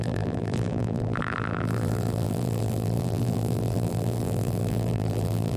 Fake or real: fake